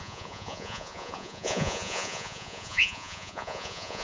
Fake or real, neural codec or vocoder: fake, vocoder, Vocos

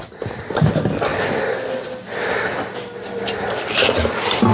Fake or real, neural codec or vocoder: real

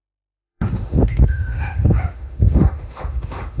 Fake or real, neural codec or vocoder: fake, autoencoder, DAC-VAE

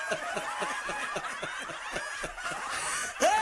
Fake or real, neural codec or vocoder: real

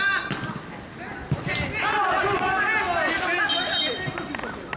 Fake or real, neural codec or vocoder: real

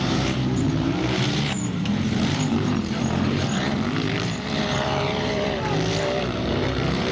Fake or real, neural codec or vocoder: fake, vocoder, BigVGAN v2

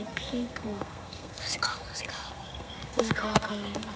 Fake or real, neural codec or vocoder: fake, codec, SNAC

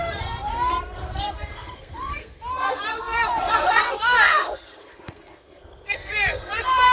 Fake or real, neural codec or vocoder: fake, codec, SNAC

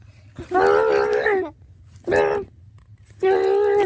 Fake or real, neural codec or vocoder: real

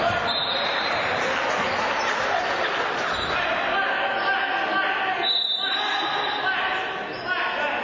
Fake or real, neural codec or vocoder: real